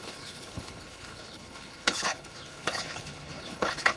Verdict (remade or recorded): remade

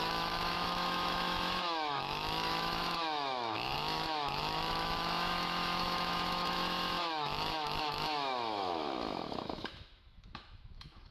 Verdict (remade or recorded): remade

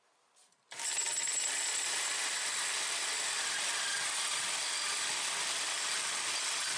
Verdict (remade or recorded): recorded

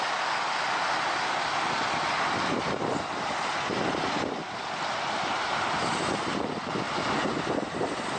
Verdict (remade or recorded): recorded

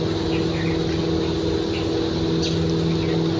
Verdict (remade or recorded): recorded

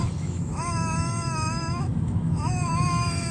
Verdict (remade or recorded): remade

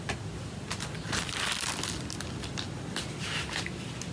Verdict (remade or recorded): recorded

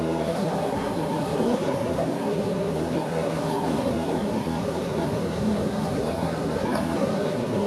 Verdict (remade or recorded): remade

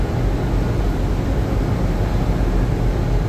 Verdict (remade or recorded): recorded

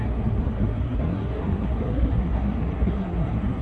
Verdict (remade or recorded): remade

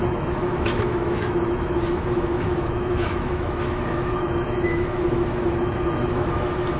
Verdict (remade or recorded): remade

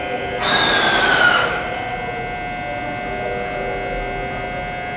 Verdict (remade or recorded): recorded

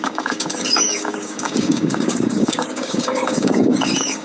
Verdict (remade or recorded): remade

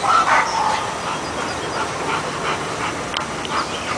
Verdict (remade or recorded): recorded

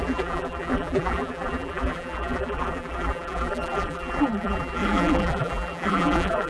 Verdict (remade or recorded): remade